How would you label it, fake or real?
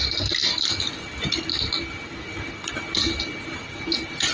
real